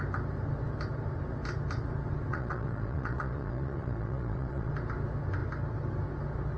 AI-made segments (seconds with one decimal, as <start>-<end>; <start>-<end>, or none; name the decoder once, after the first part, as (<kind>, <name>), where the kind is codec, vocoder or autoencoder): 2.3-4.7 (vocoder, Vocos)